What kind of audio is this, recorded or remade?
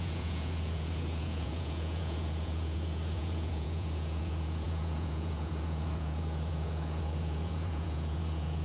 remade